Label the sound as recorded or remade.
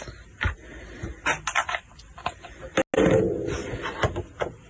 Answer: recorded